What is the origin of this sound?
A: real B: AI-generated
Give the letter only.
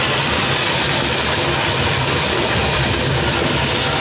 A